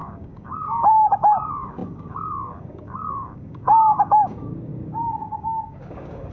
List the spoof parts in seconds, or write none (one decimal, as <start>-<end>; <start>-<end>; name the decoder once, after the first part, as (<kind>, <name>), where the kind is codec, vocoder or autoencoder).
0.0-6.3 (codec, DAC)